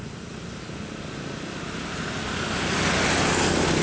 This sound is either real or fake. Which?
real